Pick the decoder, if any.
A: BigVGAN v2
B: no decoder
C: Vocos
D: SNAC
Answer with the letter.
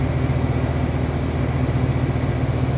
B